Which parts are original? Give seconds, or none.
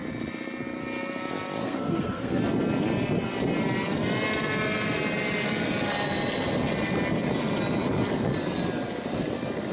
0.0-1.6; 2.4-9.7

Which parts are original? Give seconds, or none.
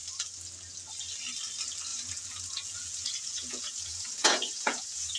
0.0-1.9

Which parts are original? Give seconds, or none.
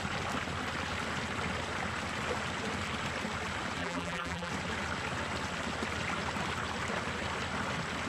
0.0-3.8; 4.5-8.1